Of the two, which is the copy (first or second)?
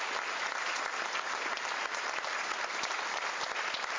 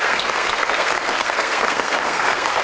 second